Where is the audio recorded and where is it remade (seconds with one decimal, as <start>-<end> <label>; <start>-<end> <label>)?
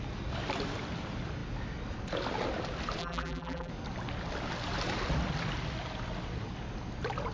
0.0-3.0 recorded; 3.0-3.7 remade; 3.7-7.3 recorded